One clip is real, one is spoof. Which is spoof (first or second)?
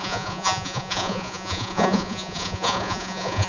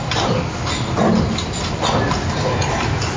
first